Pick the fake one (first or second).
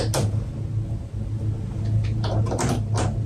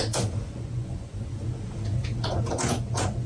second